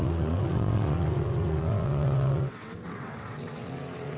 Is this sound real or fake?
fake